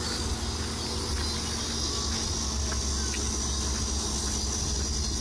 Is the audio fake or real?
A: real